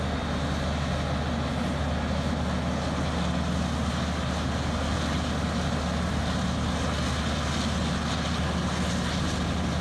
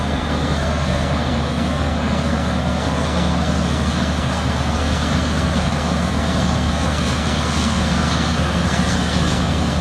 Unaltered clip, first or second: first